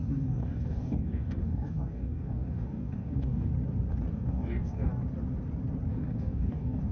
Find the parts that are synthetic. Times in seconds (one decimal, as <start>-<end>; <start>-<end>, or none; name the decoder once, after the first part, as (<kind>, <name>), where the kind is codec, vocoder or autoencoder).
0.0-3.5 (codec, DAC); 4.1-4.9; 5.9-6.9